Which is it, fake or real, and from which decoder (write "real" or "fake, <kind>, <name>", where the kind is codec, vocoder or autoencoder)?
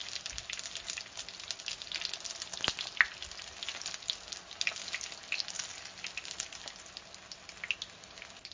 real